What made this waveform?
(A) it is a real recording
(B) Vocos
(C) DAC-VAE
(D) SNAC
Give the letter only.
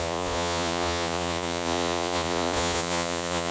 B